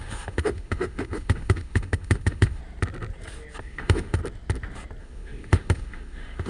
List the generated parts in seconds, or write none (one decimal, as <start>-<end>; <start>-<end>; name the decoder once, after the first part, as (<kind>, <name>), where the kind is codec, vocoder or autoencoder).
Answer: 0.0-2.6 (autoencoder, DAC-VAE); 3.6-4.2; 5.0-6.5